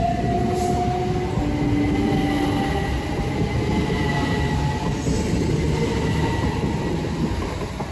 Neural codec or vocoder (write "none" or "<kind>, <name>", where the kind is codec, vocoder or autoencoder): none